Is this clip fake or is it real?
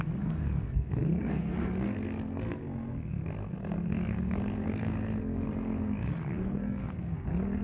fake